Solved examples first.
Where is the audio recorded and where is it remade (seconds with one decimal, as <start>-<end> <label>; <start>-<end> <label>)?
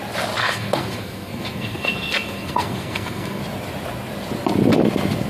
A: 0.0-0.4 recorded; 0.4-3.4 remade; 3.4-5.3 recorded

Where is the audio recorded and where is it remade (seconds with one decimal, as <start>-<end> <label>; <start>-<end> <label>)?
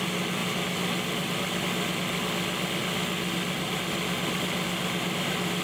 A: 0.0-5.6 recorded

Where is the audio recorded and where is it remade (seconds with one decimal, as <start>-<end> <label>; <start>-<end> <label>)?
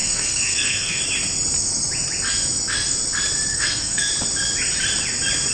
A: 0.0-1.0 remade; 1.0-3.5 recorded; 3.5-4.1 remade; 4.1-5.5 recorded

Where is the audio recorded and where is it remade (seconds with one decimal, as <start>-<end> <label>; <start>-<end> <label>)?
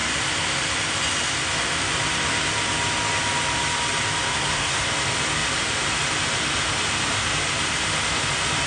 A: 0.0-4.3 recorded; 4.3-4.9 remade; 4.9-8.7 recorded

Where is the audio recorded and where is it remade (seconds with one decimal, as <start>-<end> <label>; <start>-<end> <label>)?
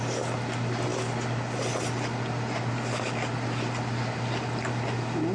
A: 0.0-5.3 recorded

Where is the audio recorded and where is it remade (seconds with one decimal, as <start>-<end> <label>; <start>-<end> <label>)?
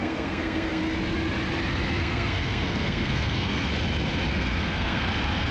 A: 0.0-0.8 remade; 0.8-2.0 recorded; 2.0-3.7 remade; 3.7-4.3 recorded; 4.3-5.5 remade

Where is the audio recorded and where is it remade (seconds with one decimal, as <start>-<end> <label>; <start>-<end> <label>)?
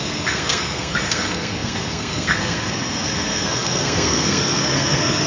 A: 0.0-5.3 remade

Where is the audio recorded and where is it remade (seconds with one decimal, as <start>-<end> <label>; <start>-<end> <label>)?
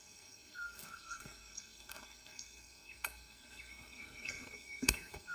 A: 0.0-5.3 remade